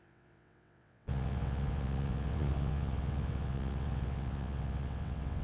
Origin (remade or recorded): remade